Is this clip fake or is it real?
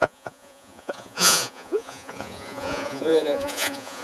fake